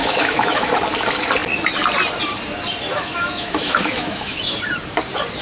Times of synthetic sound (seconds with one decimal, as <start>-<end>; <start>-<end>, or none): 0.0-0.8; 2.9-4.4